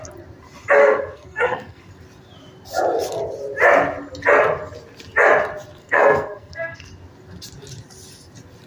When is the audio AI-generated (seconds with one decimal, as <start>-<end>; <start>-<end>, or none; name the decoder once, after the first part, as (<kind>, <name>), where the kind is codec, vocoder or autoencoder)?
0.8-1.9 (codec, SNAC); 5.8-6.9

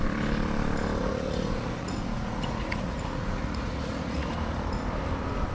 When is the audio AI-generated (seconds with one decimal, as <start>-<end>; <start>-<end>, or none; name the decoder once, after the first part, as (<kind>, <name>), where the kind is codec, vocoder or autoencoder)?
1.0-4.3 (vocoder, Vocos)